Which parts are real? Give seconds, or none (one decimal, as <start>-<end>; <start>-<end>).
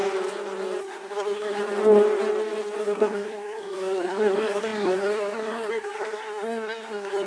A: 0.0-0.8; 1.6-2.8